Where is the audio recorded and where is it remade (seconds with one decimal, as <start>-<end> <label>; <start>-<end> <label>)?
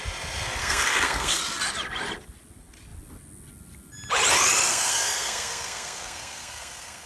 0.0-0.6 recorded; 0.6-1.4 remade; 1.4-4.7 recorded; 4.7-7.1 remade